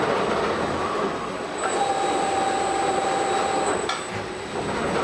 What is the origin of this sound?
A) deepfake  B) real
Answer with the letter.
B